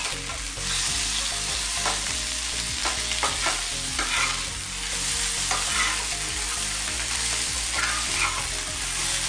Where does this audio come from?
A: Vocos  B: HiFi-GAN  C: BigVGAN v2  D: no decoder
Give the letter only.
D